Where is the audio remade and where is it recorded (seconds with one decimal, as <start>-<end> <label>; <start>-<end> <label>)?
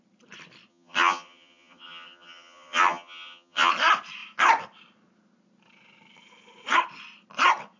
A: 0.0-0.7 recorded; 0.7-3.7 remade; 3.7-7.8 recorded